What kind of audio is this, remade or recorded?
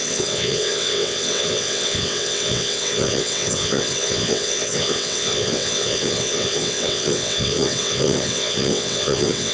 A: remade